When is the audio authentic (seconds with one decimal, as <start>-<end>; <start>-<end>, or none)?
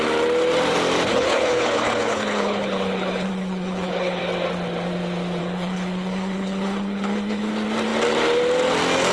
0.0-1.1; 4.2-5.4; 7.5-9.1